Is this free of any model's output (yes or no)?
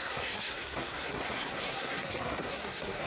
no